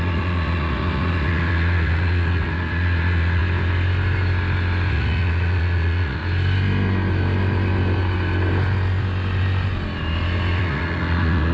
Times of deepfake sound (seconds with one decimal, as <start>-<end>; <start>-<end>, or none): 0.0-3.4; 4.9-6.2; 10.6-11.5